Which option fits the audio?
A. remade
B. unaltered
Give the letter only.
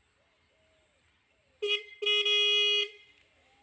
B